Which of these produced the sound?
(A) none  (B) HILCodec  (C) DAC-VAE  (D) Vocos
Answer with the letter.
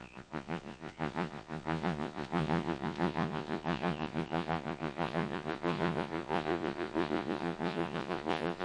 D